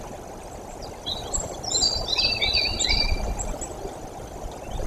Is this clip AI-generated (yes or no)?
no